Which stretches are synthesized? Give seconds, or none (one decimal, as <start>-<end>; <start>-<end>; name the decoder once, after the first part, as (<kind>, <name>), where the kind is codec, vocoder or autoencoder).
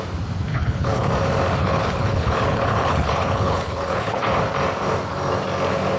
0.5-1.1 (codec, HILCodec); 1.6-4.2